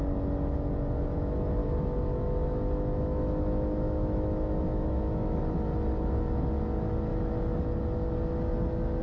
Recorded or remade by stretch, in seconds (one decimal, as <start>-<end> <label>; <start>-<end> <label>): 0.0-1.6 recorded; 1.6-5.4 remade; 5.4-9.0 recorded